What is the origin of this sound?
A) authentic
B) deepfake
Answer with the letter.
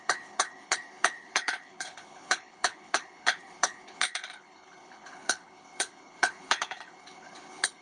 B